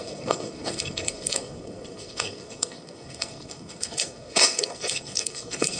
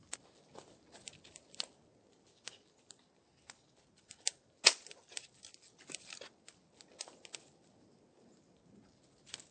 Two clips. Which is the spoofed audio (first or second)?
first